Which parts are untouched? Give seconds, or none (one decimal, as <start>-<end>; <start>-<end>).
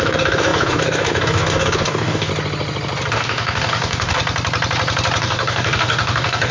2.3-3.1; 4.2-5.2